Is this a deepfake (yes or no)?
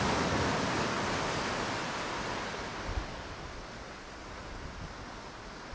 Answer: no